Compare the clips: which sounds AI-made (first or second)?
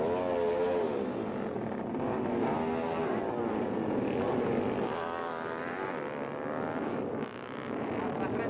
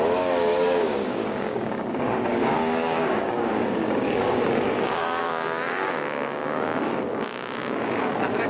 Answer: second